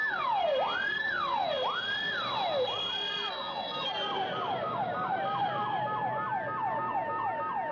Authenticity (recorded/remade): recorded